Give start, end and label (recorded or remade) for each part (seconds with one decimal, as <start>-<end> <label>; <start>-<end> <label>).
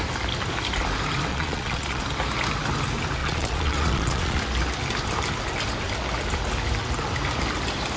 0.0-1.3 recorded; 1.3-2.0 remade; 2.0-3.2 recorded; 3.2-4.4 remade; 4.4-8.0 recorded